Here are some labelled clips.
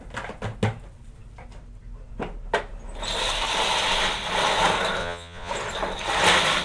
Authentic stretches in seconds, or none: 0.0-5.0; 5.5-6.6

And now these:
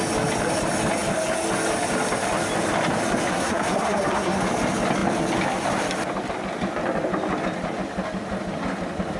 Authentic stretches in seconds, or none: 0.0-3.3; 4.4-9.2

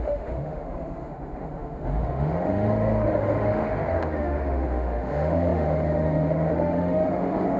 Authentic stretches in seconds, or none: none

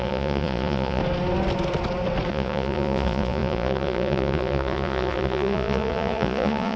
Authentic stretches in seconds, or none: 1.0-2.3